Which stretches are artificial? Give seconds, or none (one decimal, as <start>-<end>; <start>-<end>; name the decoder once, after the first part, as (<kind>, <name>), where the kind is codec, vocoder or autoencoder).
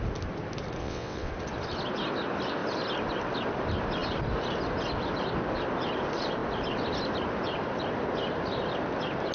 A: 0.8-1.3 (vocoder, WaveNeXt)